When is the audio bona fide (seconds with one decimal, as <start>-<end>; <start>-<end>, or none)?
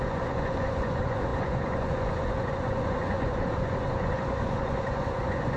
none